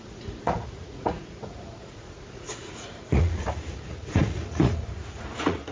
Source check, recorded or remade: remade